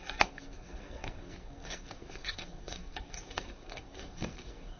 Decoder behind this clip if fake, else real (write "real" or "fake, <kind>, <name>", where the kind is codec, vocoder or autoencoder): fake, codec, SNAC